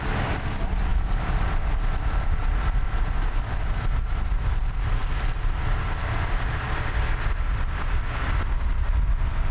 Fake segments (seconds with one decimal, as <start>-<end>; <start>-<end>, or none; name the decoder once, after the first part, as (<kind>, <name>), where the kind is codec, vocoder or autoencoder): none